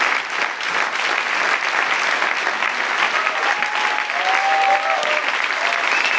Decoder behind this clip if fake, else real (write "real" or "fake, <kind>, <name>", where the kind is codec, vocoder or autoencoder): real